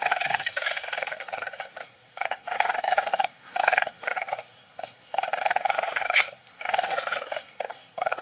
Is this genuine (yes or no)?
no